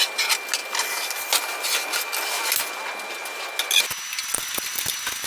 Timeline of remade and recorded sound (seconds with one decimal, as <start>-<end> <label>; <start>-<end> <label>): 0.0-5.3 recorded